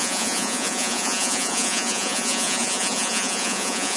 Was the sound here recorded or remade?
remade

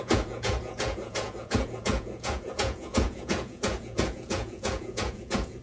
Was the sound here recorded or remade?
remade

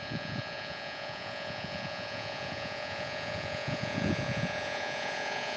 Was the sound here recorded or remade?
remade